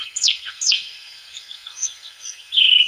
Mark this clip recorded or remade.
remade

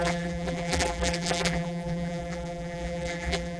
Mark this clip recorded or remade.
remade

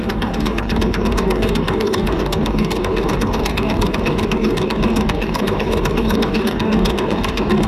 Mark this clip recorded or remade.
remade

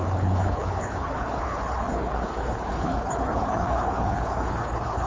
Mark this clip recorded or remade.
remade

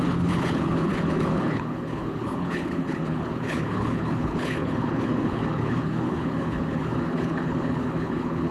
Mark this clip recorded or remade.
remade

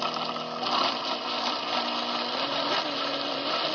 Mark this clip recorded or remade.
recorded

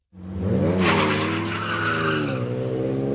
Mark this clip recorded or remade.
recorded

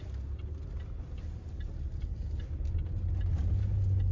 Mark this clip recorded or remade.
recorded